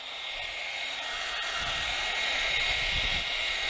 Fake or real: real